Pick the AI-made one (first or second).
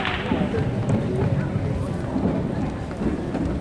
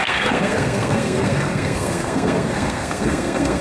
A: second